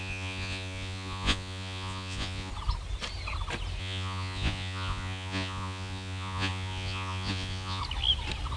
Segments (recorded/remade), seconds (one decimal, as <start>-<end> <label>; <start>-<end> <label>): 0.0-2.5 remade; 2.5-3.8 recorded; 3.8-7.8 remade; 7.8-8.6 recorded